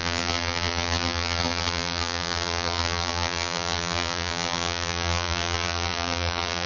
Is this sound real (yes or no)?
no